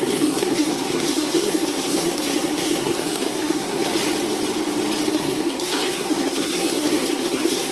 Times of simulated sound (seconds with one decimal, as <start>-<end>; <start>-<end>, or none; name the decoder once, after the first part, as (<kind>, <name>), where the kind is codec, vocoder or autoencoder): 0.0-3.9 (codec, SNAC); 5.1-7.7